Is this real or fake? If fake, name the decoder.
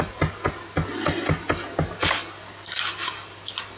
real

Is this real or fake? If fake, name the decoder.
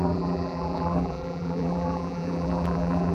fake, vocoder, BigVGAN v2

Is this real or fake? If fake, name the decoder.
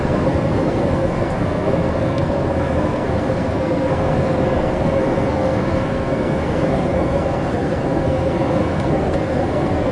fake, codec, SNAC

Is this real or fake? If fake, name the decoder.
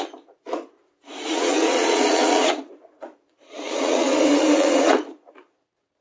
fake, vocoder, Vocos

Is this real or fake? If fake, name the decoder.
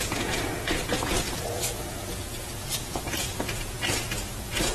fake, vocoder, Vocos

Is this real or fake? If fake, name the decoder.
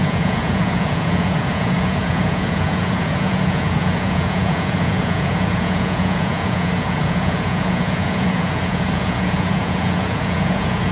fake, vocoder, Vocos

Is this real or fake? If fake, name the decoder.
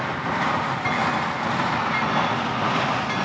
real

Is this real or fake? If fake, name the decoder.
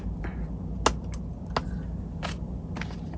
real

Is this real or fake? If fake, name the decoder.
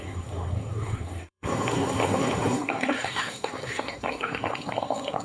fake, codec, SNAC